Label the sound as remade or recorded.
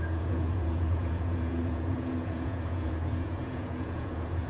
remade